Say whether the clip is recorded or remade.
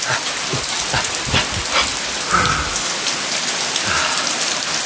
recorded